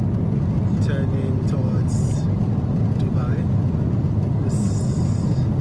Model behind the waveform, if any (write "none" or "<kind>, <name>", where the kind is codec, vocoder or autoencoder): none